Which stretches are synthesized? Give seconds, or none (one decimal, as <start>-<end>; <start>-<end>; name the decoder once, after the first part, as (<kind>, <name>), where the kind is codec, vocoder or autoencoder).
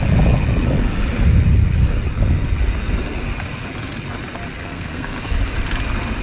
4.6-5.2 (codec, SNAC)